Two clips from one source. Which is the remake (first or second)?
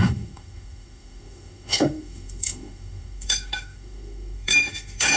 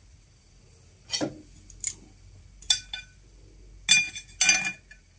first